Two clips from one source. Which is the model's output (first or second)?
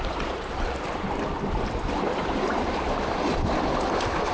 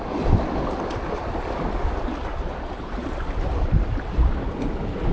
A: first